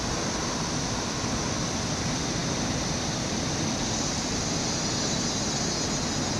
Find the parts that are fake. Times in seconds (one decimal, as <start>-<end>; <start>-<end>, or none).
none